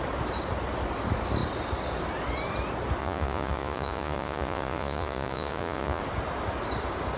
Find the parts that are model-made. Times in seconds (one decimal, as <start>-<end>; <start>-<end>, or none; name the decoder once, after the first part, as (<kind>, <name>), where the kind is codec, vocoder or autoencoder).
3.0-6.0 (vocoder, Vocos)